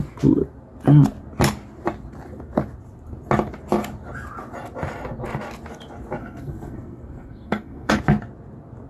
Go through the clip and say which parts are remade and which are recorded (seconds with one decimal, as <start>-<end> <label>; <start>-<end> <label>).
0.0-6.2 recorded; 6.2-8.0 remade; 8.0-8.9 recorded

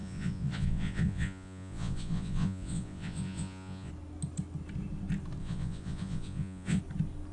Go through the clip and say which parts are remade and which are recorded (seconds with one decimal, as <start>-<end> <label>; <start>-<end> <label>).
0.0-3.9 remade; 3.9-5.4 recorded; 5.4-6.8 remade; 6.8-7.3 recorded